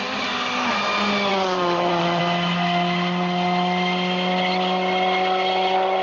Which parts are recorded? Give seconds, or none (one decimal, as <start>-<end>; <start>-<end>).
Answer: 0.0-1.3; 2.2-6.0